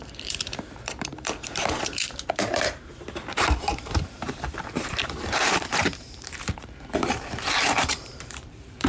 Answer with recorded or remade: remade